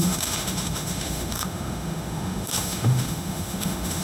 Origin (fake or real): fake